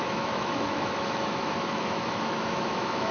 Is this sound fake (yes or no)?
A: yes